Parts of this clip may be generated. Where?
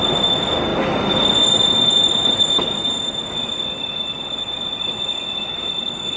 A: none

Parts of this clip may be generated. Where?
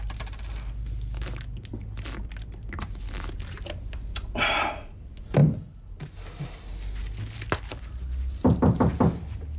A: none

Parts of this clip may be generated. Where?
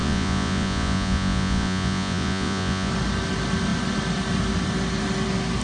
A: 0.0-2.9 (vocoder, Vocos)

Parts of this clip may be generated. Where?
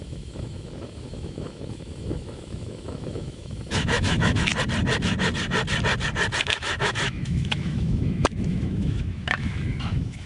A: 0.0-4.5 (autoencoder, DAC-VAE); 6.4-10.3